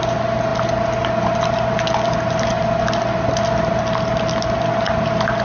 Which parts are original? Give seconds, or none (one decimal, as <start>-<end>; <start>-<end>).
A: 0.0-5.4

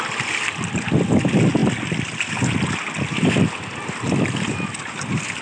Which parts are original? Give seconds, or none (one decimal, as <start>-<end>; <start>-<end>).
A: 0.0-5.4

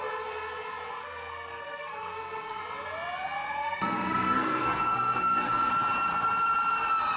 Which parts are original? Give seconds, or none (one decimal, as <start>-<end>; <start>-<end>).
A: 0.0-1.0; 2.6-3.6; 5.7-7.2

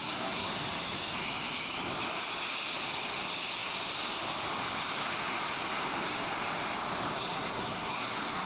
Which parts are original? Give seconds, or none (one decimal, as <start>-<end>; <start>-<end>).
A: 0.5-7.2

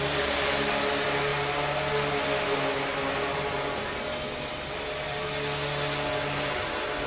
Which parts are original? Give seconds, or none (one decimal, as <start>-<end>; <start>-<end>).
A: 0.0-7.1